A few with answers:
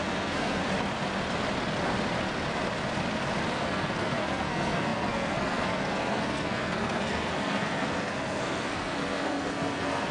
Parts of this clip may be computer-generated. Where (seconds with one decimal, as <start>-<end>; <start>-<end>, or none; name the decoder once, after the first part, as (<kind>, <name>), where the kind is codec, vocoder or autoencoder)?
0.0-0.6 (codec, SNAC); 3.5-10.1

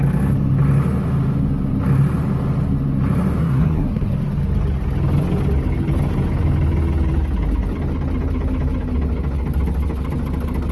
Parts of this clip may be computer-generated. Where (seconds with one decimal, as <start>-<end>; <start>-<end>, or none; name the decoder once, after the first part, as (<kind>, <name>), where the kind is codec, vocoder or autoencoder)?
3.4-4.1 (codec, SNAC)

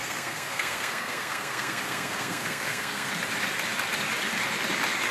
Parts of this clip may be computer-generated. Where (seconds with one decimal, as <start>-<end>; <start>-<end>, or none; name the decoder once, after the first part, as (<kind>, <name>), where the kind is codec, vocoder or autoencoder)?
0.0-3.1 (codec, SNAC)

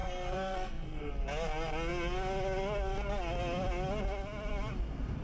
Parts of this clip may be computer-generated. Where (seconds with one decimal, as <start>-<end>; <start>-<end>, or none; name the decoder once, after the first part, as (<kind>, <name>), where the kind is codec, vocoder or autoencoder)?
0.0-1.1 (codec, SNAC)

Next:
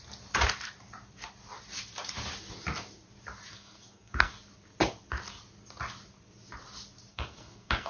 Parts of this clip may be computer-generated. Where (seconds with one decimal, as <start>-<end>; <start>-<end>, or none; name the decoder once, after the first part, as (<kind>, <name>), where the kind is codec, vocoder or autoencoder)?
3.5-4.3 (codec, SNAC); 7.1-7.9

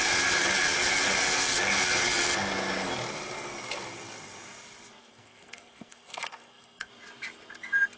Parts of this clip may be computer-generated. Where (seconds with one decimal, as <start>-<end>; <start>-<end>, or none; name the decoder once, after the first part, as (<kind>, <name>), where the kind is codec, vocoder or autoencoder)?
5.0-6.9 (codec, SNAC)

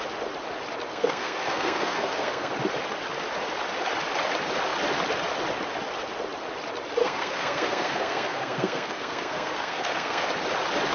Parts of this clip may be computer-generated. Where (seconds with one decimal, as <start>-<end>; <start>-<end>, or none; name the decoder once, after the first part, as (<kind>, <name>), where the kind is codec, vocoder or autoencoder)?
0.9-2.5 (codec, SNAC); 7.0-10.3